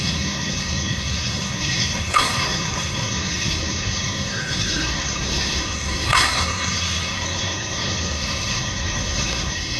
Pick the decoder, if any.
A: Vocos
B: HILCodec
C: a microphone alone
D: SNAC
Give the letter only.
D